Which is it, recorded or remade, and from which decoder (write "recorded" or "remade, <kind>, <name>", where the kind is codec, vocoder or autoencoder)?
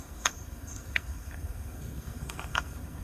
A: remade, codec, SNAC